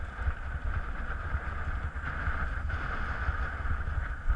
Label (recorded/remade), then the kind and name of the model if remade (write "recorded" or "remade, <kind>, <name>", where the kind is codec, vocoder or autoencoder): recorded